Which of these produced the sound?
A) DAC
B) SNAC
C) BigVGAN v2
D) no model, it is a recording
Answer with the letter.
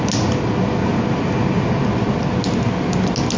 D